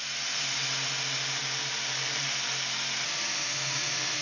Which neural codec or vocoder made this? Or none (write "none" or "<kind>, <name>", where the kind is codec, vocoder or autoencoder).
none